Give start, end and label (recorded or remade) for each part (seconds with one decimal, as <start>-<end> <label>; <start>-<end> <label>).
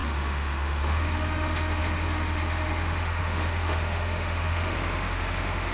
0.0-5.7 remade